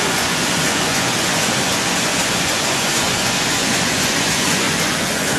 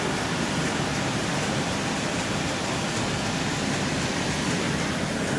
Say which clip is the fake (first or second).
first